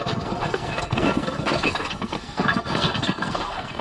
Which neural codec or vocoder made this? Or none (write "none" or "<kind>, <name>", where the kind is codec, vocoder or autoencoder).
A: codec, SNAC